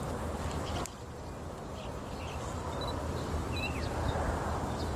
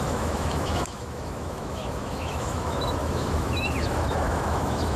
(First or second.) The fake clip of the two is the second